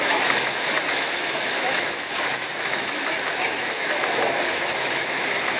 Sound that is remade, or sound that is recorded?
remade